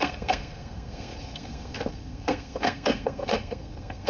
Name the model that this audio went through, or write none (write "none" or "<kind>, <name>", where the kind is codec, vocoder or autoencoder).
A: codec, SNAC